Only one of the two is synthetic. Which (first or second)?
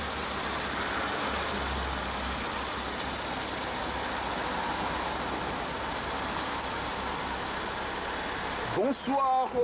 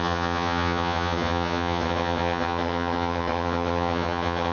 second